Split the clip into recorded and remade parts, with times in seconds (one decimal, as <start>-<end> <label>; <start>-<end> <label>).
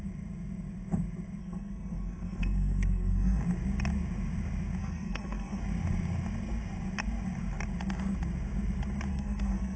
0.0-1.4 recorded; 1.4-3.4 remade; 3.4-4.8 recorded; 4.8-5.6 remade; 5.6-9.1 recorded; 9.1-9.8 remade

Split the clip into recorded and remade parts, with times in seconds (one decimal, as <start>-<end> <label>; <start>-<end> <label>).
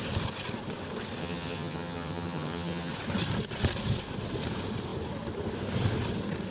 0.0-1.2 recorded; 1.2-2.9 remade; 2.9-6.5 recorded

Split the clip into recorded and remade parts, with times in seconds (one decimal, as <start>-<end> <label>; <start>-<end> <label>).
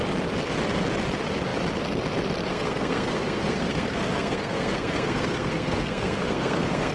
0.0-2.5 recorded; 2.5-6.9 remade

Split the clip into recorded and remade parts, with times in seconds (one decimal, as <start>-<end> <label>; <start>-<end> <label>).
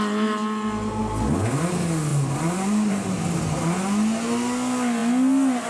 0.0-2.1 recorded; 2.1-3.4 remade; 3.4-5.7 recorded